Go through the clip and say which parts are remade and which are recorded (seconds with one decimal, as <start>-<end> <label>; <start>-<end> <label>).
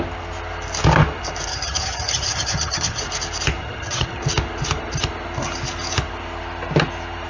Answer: 0.0-1.5 recorded; 1.5-3.0 remade; 3.0-3.6 recorded; 3.6-4.2 remade; 4.2-7.3 recorded